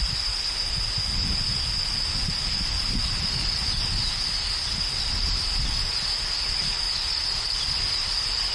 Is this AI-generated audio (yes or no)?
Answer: no